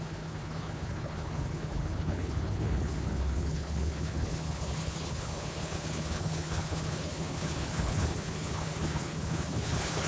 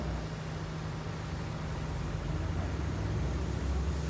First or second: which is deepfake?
first